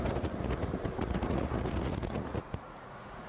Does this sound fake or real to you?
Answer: fake